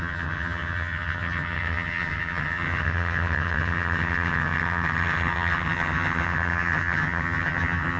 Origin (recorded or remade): remade